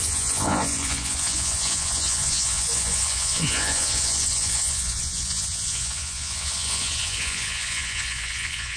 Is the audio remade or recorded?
remade